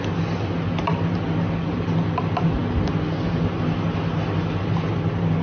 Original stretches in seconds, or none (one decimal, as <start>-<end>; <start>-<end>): 0.0-5.4